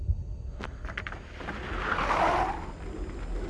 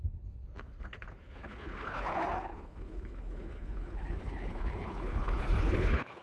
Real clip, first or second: first